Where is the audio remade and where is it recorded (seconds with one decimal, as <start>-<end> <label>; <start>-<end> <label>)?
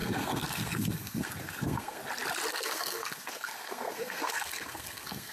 0.0-2.0 remade; 2.0-2.5 recorded; 2.5-5.3 remade